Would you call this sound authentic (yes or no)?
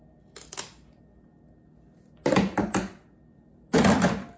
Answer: yes